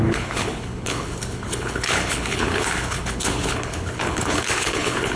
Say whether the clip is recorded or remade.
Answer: remade